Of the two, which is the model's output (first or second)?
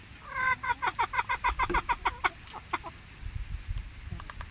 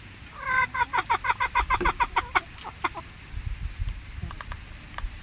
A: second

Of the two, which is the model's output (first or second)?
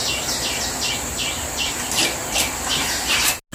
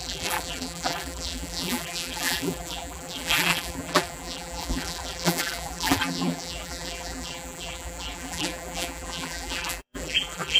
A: second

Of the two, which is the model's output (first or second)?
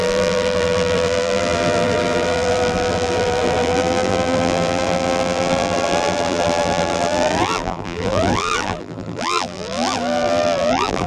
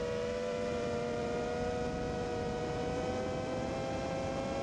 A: first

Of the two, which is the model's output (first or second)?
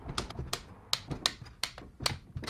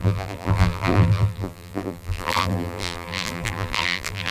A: second